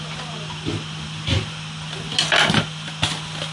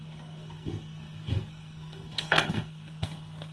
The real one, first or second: first